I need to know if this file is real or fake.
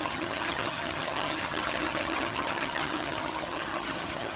fake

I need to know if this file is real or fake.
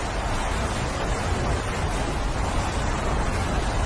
real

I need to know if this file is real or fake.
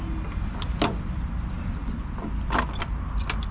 real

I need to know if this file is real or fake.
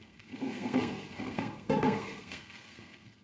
fake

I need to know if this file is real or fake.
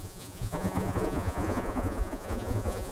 fake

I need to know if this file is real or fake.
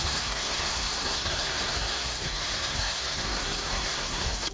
fake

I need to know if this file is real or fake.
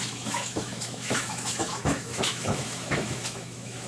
fake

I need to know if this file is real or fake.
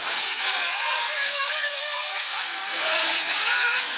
fake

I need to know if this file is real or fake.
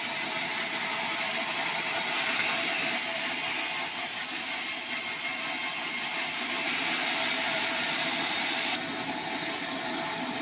real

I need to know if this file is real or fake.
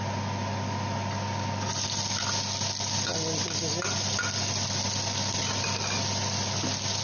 real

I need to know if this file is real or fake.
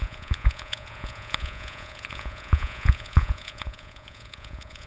fake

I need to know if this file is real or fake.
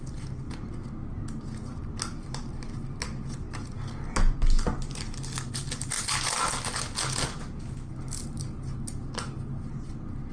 real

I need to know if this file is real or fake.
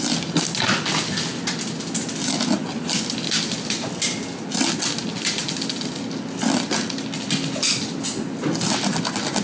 real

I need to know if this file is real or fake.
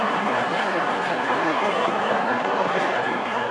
fake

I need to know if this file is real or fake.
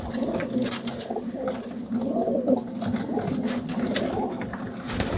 real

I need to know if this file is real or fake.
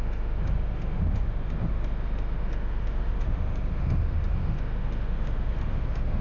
fake